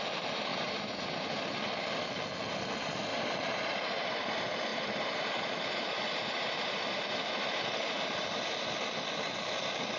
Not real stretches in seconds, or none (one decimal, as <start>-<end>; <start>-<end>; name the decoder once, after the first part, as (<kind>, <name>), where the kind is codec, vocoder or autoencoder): 0.5-1.4 (vocoder, BigVGAN v2); 3.1-4.1; 4.7-8.7